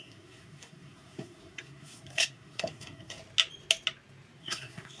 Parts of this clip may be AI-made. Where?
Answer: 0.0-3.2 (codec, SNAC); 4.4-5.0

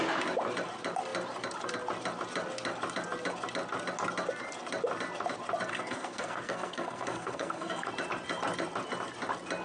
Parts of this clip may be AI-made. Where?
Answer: 5.7-7.9 (codec, SNAC)

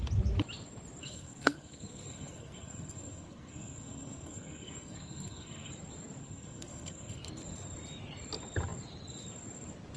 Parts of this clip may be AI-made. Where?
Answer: 1.0-5.7 (codec, SNAC); 6.2-7.3

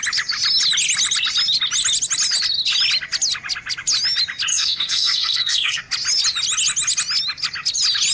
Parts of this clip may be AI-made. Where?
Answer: 4.5-5.8 (codec, SNAC)